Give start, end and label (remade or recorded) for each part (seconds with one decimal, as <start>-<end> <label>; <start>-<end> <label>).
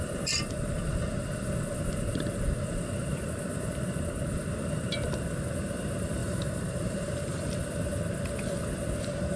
0.0-6.2 recorded; 6.2-7.5 remade; 7.5-9.4 recorded